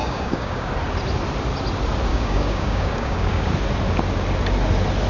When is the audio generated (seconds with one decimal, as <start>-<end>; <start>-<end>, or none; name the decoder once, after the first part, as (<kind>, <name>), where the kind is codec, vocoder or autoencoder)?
0.0-0.7 (codec, DAC); 2.1-3.5